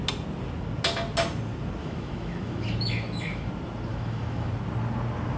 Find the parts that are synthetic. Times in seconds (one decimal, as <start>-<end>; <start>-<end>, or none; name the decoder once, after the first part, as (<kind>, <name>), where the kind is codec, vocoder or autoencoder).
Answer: 1.8-3.5 (autoencoder, DAC-VAE); 3.9-4.5